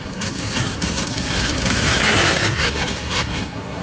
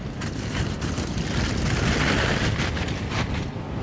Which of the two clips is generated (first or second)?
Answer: first